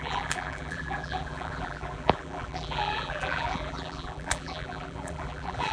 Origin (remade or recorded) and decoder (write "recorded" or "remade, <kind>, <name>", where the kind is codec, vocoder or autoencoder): remade, vocoder, BigVGAN v2